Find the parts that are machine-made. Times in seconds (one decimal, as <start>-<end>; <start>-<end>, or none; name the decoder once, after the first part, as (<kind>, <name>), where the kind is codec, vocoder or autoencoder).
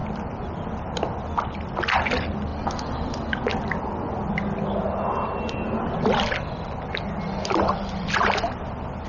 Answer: none